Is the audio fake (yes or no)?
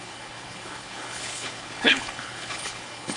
yes